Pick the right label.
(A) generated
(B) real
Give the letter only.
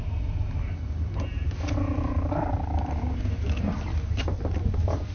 B